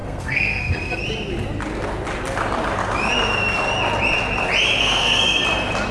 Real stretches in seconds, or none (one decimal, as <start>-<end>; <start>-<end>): 1.0-4.8; 5.4-5.9